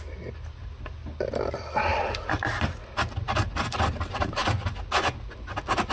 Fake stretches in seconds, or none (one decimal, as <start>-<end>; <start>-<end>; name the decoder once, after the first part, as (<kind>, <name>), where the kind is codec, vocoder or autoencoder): none